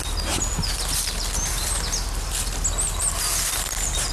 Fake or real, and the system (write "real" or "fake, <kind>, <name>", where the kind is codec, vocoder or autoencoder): real